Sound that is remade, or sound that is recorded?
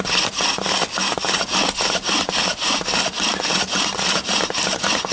recorded